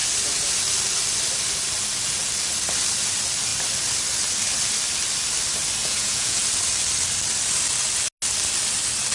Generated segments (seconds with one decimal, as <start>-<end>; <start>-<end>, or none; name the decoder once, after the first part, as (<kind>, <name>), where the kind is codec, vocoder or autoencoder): 5.8-6.4 (vocoder, Vocos)